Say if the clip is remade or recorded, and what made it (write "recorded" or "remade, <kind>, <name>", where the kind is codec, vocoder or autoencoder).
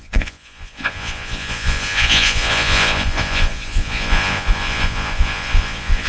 remade, vocoder, Vocos